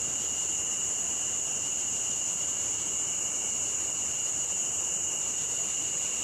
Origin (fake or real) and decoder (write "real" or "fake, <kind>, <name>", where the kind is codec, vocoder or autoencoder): real